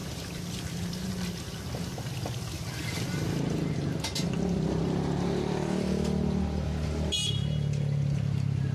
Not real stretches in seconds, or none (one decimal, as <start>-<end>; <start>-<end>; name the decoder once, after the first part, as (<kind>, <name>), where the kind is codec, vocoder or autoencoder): 0.0-1.1 (vocoder, BigVGAN v2)